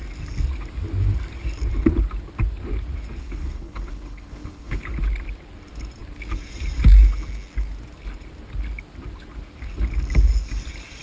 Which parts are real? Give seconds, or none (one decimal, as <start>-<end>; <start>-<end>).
0.0-3.2; 4.9-11.0